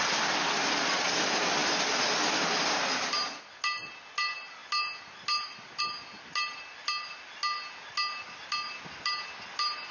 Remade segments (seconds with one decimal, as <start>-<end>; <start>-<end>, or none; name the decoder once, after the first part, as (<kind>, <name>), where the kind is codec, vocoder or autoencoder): none